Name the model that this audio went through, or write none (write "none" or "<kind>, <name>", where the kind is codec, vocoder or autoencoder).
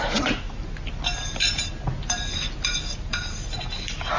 none